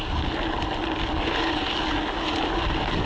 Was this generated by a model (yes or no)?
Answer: no